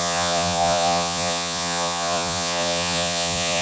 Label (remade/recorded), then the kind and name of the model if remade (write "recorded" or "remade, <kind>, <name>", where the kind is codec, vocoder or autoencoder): remade, vocoder, Vocos